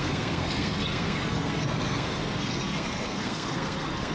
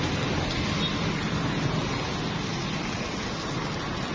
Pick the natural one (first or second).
second